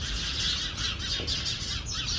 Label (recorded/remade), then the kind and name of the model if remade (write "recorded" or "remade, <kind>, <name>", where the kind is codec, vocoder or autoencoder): recorded